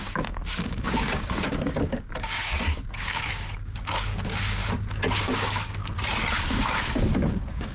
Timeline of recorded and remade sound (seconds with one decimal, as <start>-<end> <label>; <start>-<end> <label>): 0.0-4.6 remade; 4.6-5.2 recorded; 5.2-5.8 remade; 5.8-6.4 recorded; 6.4-7.7 remade